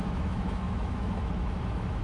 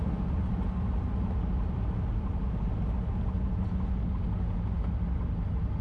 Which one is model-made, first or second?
first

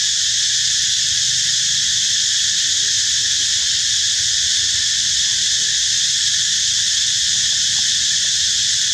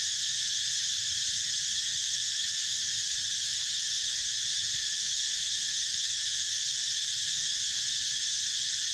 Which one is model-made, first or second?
second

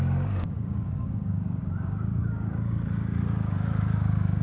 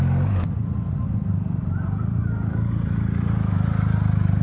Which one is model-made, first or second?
first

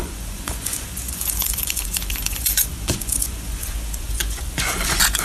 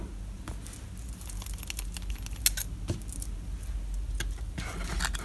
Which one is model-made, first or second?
first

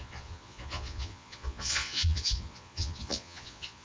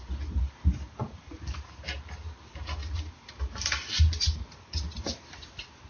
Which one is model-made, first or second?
first